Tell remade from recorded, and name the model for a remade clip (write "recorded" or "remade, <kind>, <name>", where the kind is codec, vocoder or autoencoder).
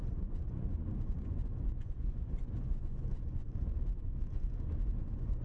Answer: remade, vocoder, Vocos